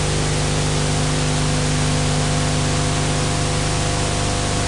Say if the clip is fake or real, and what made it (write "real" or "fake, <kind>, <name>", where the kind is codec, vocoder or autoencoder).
real